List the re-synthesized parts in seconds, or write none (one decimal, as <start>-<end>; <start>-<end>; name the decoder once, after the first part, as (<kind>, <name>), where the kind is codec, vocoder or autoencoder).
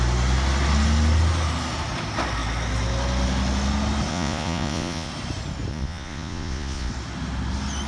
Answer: 4.1-5.1 (vocoder, Vocos); 5.7-6.9